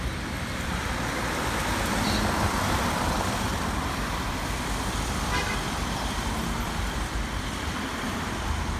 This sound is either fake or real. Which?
fake